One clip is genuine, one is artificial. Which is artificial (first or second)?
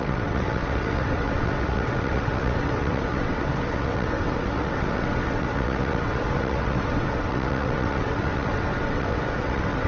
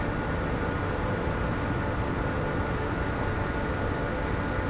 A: first